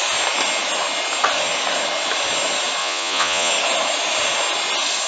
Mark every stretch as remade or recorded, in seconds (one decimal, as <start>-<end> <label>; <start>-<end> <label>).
0.0-2.8 recorded; 2.8-3.5 remade; 3.5-5.1 recorded